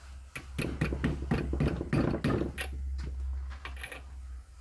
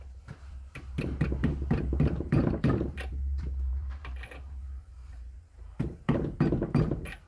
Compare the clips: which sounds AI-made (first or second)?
second